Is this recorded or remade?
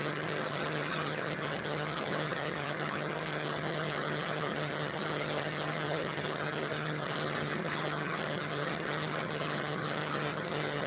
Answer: remade